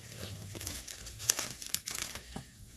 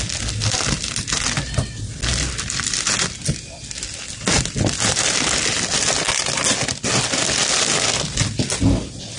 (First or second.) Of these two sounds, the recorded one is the second